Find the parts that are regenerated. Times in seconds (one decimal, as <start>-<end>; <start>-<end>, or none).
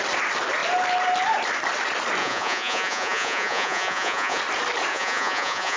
2.2-4.4; 4.9-5.8